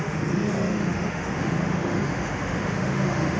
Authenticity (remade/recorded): remade